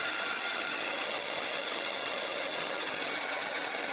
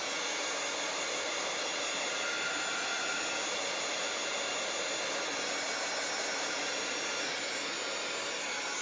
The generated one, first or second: first